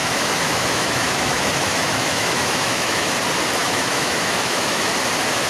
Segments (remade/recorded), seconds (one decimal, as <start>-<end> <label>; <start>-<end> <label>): 0.0-3.1 remade; 3.1-3.6 recorded; 3.6-4.9 remade; 4.9-5.5 recorded